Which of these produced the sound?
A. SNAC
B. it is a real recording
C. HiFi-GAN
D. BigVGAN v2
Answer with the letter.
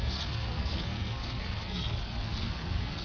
A